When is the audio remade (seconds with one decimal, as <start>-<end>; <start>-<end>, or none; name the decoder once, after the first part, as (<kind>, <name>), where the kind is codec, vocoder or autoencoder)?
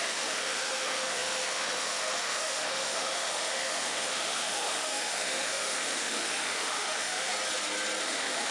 0.0-7.3 (autoencoder, DAC-VAE); 8.0-8.5